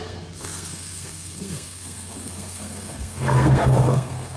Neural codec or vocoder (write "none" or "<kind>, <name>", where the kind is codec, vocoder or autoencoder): codec, SNAC